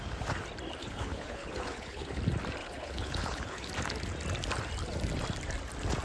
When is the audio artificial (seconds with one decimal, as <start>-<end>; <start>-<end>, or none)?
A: 0.8-2.2; 2.6-3.7